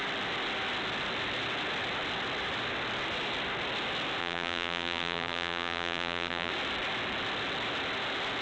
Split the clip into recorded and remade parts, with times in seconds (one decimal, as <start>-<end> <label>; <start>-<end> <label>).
0.0-4.2 recorded; 4.2-6.5 remade; 6.5-8.4 recorded